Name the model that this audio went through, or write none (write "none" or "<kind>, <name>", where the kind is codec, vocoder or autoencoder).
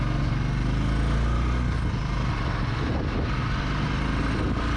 none